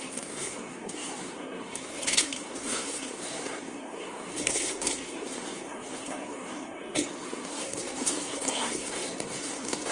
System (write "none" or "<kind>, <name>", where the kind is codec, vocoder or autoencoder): codec, SNAC